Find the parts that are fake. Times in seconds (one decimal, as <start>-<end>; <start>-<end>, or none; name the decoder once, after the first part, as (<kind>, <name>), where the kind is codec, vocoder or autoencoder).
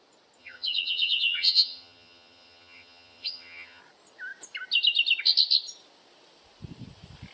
0.4-3.8 (vocoder, HiFi-GAN)